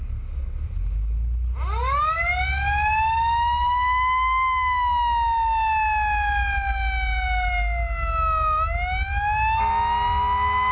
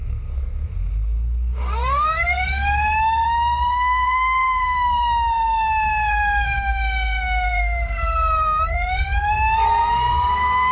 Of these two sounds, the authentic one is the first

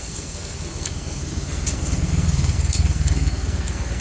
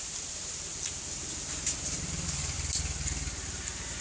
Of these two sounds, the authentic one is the second